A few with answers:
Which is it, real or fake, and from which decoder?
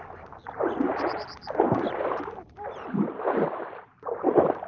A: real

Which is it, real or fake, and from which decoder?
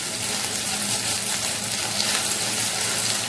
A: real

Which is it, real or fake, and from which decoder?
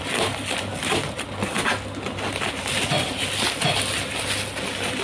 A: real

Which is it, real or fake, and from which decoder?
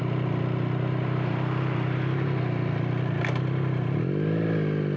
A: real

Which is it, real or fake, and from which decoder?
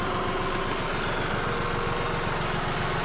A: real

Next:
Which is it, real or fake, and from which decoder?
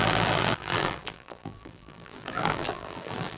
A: fake, vocoder, BigVGAN v2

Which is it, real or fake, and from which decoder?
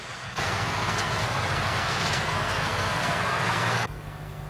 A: fake, codec, SNAC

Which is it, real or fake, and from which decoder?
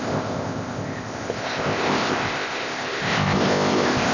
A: fake, codec, ZipCodec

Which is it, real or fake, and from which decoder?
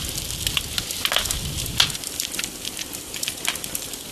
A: real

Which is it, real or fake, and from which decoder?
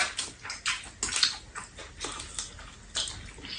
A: real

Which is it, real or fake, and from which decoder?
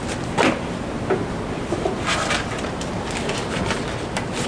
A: real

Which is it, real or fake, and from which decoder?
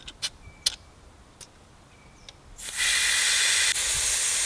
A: real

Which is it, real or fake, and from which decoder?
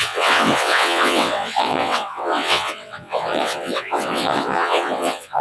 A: fake, vocoder, WaveNeXt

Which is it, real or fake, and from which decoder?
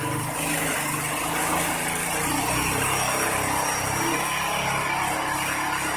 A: real